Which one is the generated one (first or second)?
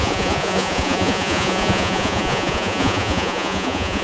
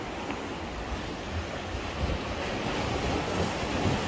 first